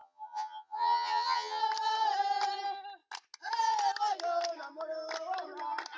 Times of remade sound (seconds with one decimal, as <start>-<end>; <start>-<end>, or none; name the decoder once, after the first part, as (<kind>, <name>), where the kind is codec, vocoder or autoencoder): 0.0-1.6 (vocoder, HiFi-GAN)